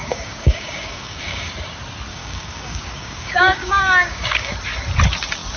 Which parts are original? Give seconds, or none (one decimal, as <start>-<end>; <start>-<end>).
1.5-2.1; 4.5-5.6